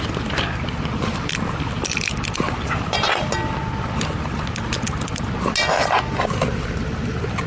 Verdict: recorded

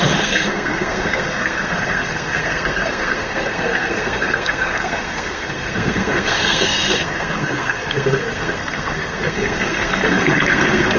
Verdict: remade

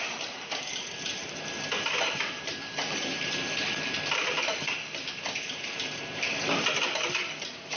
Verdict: remade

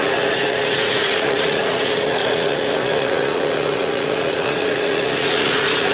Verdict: remade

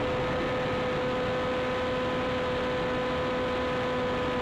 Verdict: recorded